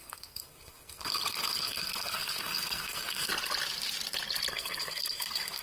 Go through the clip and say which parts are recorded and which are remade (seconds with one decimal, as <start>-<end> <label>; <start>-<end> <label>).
0.0-3.3 remade; 3.3-4.5 recorded; 4.5-5.6 remade